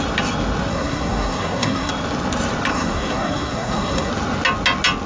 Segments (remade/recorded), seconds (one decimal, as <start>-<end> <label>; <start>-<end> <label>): 0.0-0.7 recorded; 0.7-1.9 remade; 1.9-2.7 recorded; 2.7-4.1 remade; 4.1-5.1 recorded